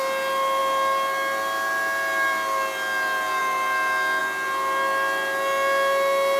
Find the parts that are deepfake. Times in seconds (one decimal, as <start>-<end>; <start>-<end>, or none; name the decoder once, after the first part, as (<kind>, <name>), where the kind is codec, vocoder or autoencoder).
none